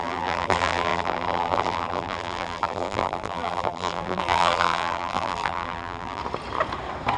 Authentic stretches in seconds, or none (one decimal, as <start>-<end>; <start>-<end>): 6.2-7.2